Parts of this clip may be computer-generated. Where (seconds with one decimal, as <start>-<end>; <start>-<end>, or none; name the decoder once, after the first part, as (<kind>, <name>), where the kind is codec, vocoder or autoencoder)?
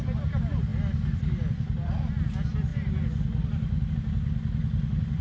none